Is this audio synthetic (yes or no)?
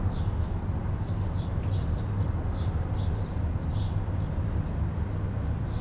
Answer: no